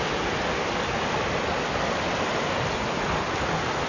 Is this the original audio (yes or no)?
yes